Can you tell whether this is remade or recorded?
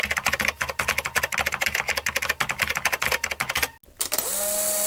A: recorded